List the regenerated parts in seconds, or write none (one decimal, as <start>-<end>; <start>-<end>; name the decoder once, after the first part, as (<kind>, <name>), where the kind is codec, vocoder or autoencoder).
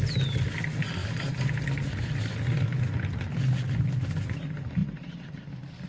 none